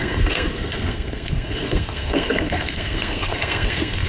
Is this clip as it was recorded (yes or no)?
no